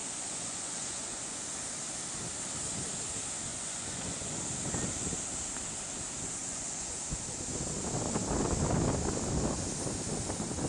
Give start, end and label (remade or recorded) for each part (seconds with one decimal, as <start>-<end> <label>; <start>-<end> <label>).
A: 0.0-1.5 remade; 1.5-3.5 recorded; 3.5-4.4 remade; 4.4-6.4 recorded; 6.4-6.9 remade; 6.9-10.7 recorded